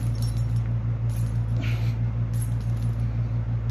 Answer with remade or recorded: recorded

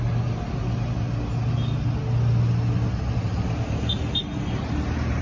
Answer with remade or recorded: recorded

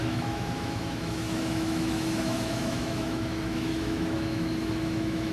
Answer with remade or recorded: remade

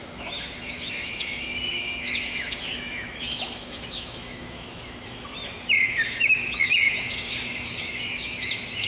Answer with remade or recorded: remade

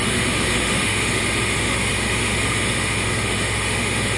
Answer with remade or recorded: remade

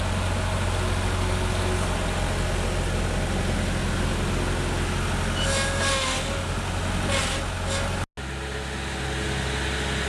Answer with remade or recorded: recorded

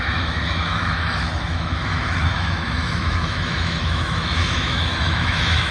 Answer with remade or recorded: remade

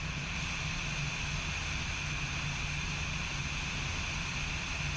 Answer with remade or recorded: recorded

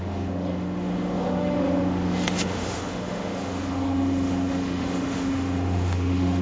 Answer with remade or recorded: remade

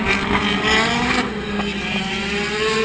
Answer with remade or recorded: recorded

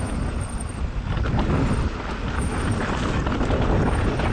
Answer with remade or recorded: recorded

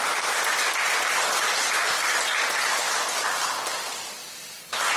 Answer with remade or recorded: recorded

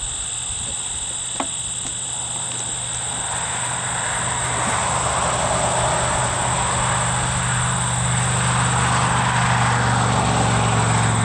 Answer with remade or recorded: recorded